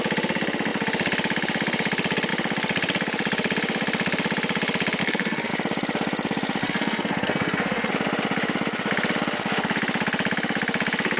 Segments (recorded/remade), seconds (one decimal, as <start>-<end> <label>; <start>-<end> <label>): 0.0-5.0 recorded; 5.0-5.5 remade; 5.5-6.6 recorded; 6.6-7.9 remade; 7.9-11.2 recorded